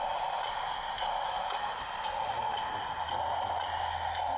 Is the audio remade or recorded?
recorded